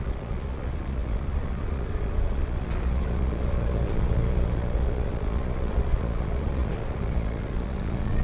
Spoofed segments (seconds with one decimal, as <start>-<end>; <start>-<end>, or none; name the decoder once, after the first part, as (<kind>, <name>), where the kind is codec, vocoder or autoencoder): 0.0-8.2 (vocoder, Vocos)

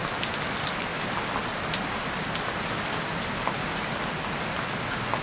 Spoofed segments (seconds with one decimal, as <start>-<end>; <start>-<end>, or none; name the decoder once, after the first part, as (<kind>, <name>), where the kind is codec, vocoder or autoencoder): none

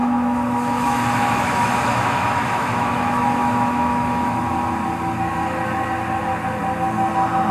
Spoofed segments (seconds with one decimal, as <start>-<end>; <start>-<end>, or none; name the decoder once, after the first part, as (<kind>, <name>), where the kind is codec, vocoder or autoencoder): 0.0-4.5 (autoencoder, DAC-VAE)